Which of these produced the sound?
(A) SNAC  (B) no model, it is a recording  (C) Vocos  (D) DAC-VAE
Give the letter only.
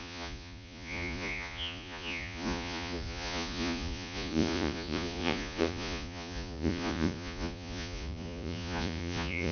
C